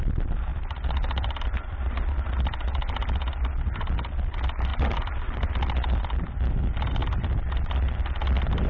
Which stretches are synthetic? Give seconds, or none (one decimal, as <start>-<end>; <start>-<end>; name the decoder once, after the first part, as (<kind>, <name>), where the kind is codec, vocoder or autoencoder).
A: 0.5-2.1 (vocoder, BigVGAN v2); 4.7-5.5; 7.0-8.7